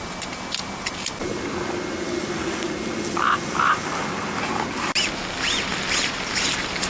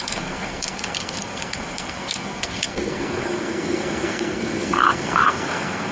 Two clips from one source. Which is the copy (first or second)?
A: second